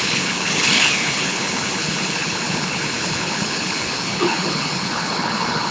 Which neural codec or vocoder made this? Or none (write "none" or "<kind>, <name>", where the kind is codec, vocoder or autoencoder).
codec, HILCodec